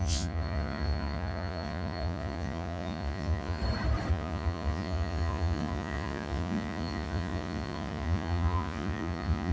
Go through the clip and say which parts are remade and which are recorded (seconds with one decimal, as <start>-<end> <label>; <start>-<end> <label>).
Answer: 0.0-3.6 remade; 3.6-4.1 recorded; 4.1-9.5 remade